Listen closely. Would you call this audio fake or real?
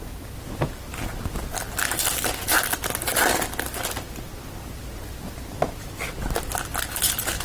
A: real